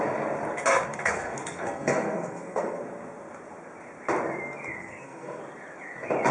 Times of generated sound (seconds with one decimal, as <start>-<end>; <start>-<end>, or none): 0.9-2.8; 4.8-5.4